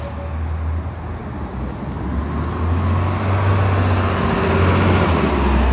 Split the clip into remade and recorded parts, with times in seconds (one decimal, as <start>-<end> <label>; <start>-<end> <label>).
0.0-5.7 recorded